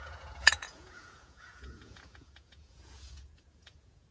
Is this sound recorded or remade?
remade